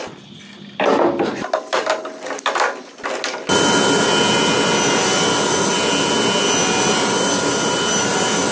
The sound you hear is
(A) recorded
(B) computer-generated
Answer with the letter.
A